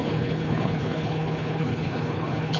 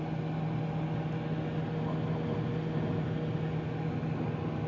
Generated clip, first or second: first